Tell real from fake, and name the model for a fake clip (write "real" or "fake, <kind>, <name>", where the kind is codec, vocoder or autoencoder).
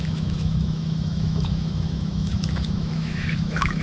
fake, autoencoder, DAC-VAE